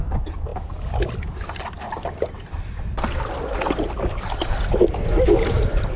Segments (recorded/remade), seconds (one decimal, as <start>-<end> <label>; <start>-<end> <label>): 0.0-6.0 remade